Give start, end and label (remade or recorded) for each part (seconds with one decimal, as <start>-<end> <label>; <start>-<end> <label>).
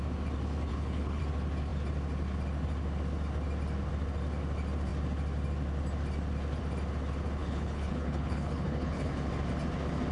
0.0-0.7 recorded; 0.7-1.2 remade; 1.2-7.4 recorded; 7.4-9.3 remade; 9.3-10.1 recorded